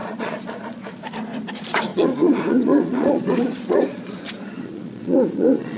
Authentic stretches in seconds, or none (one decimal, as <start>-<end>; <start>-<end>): 1.0-1.9